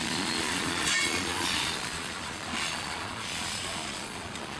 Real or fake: fake